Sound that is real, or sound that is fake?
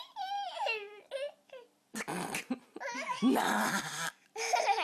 real